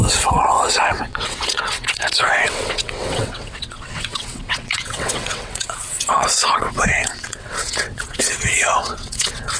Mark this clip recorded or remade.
remade